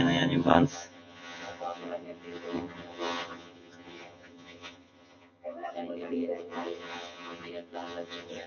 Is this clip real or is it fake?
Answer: fake